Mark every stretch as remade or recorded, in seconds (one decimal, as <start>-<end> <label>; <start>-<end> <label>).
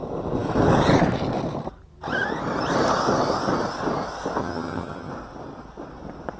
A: 0.0-4.4 recorded; 4.4-5.1 remade; 5.1-6.4 recorded